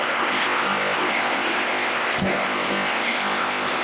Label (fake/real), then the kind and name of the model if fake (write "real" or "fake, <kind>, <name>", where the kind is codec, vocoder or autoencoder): fake, codec, ZipCodec